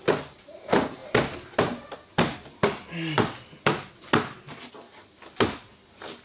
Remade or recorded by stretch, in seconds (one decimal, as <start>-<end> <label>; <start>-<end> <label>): 0.0-6.2 recorded